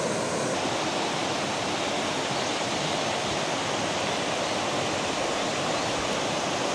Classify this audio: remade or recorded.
recorded